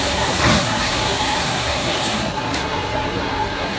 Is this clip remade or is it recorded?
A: remade